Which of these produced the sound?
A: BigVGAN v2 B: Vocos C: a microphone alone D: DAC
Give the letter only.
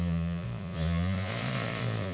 B